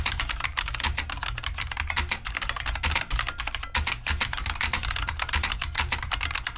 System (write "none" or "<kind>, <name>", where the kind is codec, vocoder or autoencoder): none